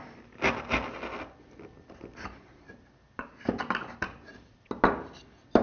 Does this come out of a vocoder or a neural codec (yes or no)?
no